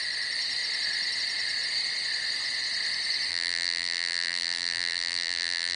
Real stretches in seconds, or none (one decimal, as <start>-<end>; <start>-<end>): 0.0-3.3